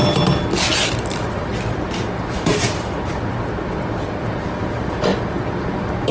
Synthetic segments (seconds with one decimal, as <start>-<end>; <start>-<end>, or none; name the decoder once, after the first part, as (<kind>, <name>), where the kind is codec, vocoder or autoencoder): 0.8-1.5 (vocoder, BigVGAN v2); 4.2-6.1